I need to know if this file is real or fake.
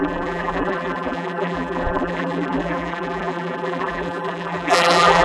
fake